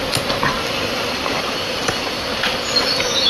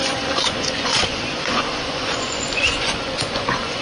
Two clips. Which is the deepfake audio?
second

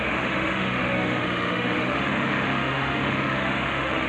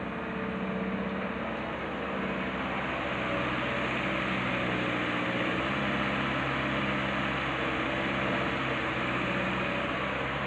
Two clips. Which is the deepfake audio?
first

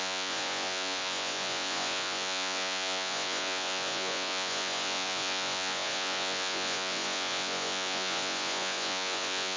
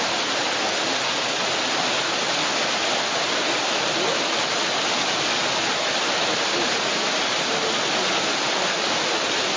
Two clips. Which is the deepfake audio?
first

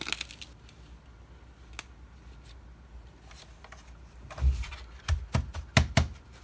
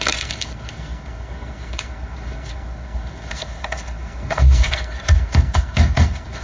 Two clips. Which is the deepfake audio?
second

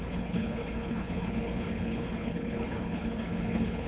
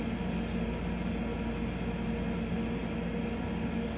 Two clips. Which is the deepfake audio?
first